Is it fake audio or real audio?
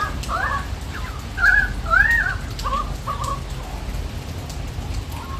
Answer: real